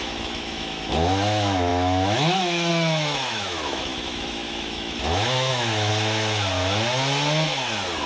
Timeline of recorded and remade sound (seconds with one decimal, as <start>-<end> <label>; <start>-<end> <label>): 0.0-5.9 remade; 5.9-8.1 recorded